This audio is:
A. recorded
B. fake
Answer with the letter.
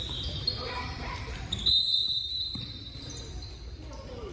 B